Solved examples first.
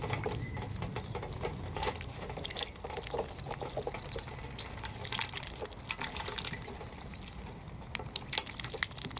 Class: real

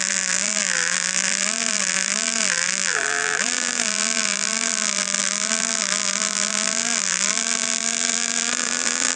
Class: fake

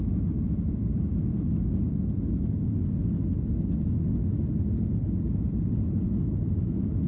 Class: real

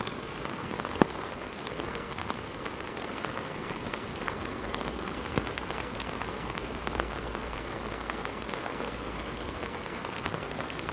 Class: fake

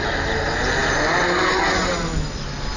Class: real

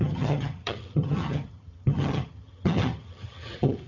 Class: fake